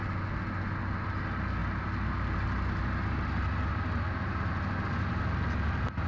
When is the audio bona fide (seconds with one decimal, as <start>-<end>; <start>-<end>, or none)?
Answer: 0.0-6.1